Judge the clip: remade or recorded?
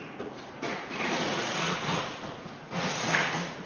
remade